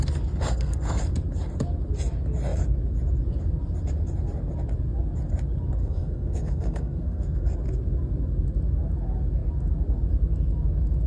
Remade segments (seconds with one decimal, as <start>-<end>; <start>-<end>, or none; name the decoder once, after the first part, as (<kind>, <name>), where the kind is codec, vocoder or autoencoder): 0.4-1.0 (codec, SNAC); 5.8-7.5